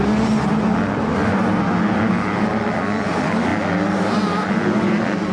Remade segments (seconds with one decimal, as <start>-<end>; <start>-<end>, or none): none